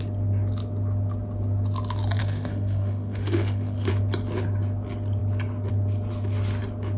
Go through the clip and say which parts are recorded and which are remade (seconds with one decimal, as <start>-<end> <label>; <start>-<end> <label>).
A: 0.0-2.2 recorded; 2.2-3.9 remade; 3.9-7.0 recorded